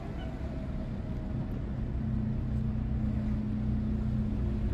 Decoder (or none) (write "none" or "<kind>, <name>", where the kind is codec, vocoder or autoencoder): none